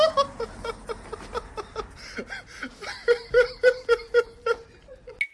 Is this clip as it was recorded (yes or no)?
yes